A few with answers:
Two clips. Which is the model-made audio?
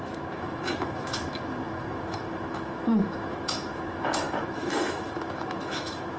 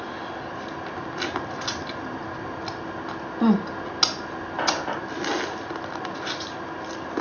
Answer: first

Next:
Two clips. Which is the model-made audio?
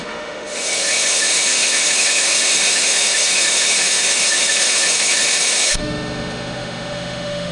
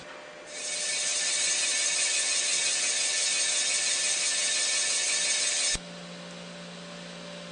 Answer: first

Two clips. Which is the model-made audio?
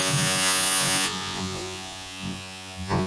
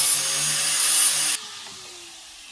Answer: first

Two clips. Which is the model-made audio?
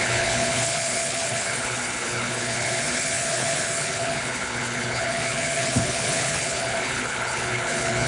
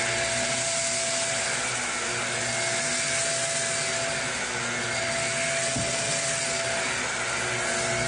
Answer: first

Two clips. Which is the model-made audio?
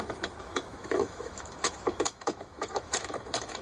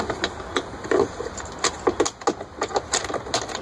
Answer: first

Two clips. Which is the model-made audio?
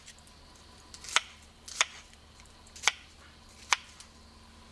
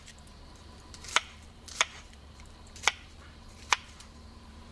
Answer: second